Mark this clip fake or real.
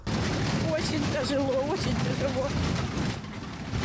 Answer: real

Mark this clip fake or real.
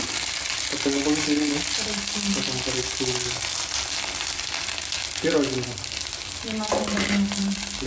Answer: real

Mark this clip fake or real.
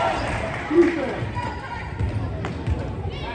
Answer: fake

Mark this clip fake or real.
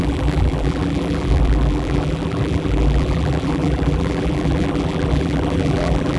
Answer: fake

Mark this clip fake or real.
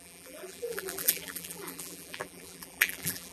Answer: fake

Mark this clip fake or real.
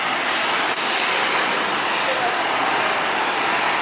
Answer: real